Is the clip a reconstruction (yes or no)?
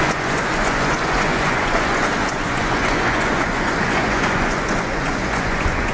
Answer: yes